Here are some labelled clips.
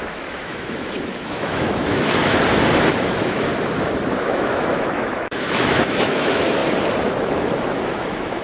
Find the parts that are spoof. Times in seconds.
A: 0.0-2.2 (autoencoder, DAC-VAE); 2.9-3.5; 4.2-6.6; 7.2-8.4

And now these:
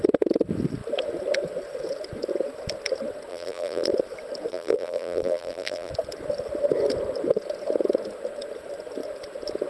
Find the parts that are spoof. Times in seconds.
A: 3.3-3.9 (vocoder, BigVGAN v2); 4.5-5.9

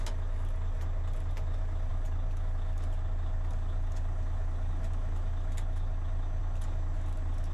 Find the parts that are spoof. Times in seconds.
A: none

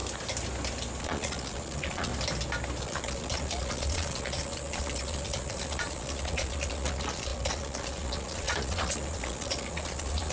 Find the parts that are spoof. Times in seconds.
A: 1.0-2.1 (vocoder, Vocos); 2.8-10.3

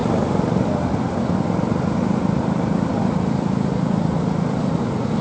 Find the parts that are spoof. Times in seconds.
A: none

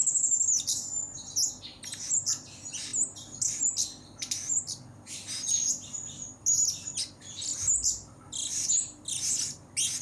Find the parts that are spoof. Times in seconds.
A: none

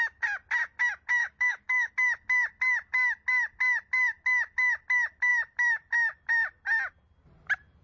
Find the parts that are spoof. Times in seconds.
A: 1.2-1.9 (codec, DAC)